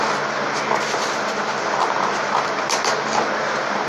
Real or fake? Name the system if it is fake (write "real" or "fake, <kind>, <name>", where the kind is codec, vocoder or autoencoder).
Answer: real